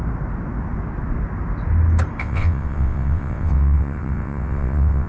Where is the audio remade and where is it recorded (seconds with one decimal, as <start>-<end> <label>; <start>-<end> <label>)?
0.0-2.2 recorded; 2.2-5.1 remade